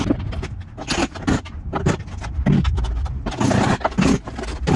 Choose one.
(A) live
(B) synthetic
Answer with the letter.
A